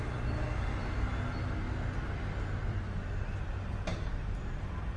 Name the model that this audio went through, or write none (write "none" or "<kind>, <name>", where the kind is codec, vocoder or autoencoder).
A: none